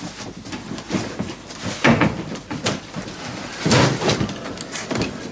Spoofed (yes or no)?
no